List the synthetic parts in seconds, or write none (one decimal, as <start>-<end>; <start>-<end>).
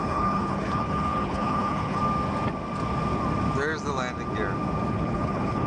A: 0.0-2.0; 4.9-5.7